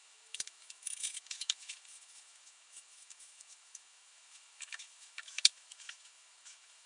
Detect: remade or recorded remade